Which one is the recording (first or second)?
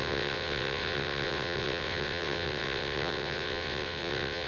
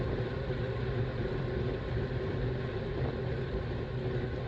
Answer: second